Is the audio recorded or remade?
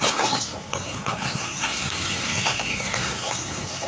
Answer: remade